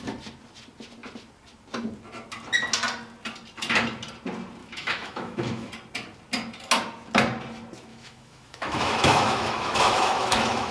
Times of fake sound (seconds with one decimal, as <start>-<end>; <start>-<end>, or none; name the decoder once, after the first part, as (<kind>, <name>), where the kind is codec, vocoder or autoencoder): 4.6-5.7 (autoencoder, DAC-VAE); 7.9-10.7